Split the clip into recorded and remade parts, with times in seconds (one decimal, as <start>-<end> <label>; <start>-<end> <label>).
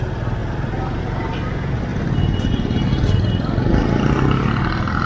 0.0-5.1 recorded